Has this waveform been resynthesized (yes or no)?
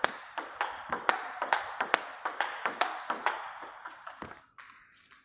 no